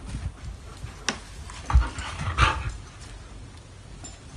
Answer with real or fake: real